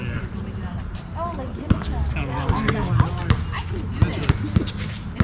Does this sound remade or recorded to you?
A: recorded